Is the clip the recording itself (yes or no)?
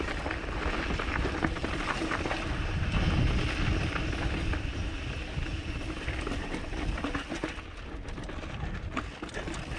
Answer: yes